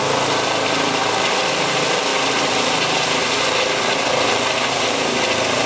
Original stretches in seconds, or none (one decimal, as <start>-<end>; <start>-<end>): 0.0-5.7